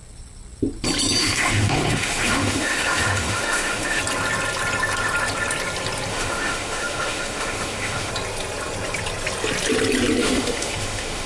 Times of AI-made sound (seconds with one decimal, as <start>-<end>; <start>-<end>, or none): 1.2-4.0; 6.1-8.1; 10.2-11.3